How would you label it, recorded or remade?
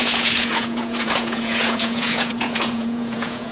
remade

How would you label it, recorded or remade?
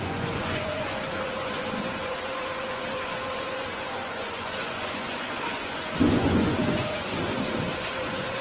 remade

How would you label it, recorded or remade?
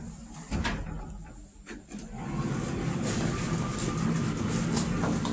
recorded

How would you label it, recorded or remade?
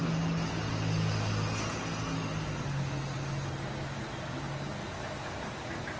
recorded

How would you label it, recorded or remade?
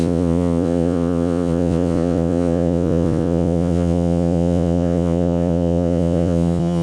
remade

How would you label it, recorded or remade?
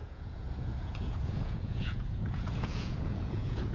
remade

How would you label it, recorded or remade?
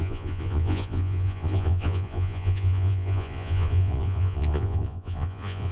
remade